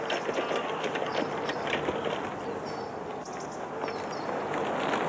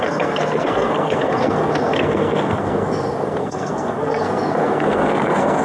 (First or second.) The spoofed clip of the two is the second